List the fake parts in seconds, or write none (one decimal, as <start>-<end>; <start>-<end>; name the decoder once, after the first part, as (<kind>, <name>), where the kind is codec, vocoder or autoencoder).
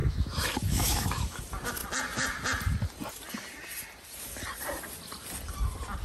0.0-1.4 (autoencoder, DAC-VAE)